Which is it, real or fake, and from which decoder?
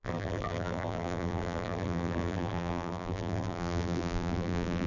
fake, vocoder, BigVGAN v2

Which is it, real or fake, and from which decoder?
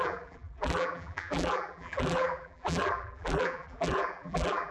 fake, vocoder, BigVGAN v2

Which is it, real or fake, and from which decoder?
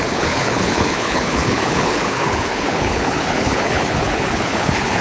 fake, codec, HILCodec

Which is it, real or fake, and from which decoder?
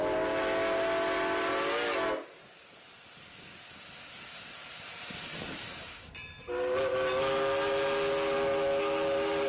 real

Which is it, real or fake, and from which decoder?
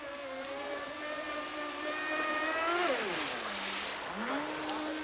real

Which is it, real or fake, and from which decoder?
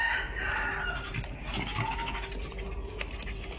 real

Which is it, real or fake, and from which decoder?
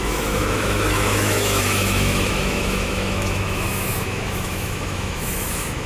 fake, autoencoder, DAC-VAE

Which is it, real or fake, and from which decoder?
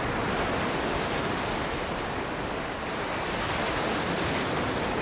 fake, vocoder, BigVGAN v2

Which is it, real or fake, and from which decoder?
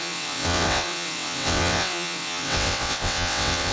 fake, vocoder, WaveNeXt